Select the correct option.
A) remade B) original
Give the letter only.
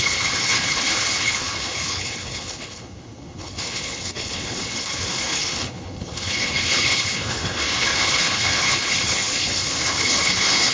A